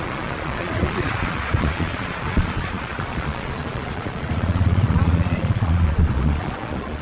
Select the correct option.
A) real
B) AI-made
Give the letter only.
B